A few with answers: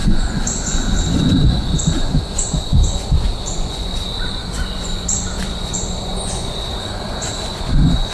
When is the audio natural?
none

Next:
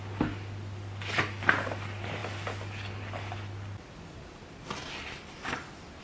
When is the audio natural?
0.0-6.0